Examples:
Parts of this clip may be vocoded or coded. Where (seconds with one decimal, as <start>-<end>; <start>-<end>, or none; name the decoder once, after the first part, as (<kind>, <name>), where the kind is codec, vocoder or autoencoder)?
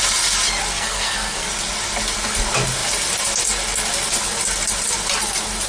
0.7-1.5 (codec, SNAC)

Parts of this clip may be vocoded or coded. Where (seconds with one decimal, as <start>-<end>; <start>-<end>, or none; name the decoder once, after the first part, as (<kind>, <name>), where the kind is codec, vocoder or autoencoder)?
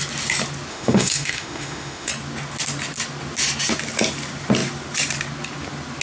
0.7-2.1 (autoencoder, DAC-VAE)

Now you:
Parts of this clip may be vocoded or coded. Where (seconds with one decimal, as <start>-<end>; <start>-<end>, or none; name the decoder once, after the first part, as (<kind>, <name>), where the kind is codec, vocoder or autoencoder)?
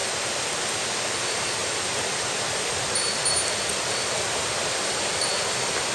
none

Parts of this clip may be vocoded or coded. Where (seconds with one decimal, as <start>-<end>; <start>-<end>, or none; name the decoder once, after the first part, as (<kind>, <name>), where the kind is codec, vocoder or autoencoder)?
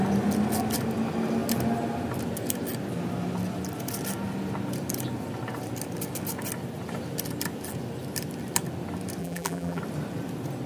9.2-9.8 (vocoder, BigVGAN v2)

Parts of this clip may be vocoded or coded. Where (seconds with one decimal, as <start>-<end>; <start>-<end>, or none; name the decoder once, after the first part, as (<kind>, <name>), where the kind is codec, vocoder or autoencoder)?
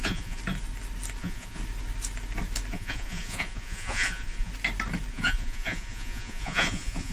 0.0-0.4 (vocoder, Vocos); 1.2-1.6; 2.7-4.5; 5.1-7.1